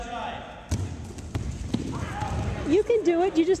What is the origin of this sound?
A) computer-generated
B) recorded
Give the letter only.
B